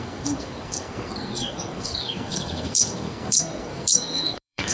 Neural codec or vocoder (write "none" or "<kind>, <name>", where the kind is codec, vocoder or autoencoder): codec, SNAC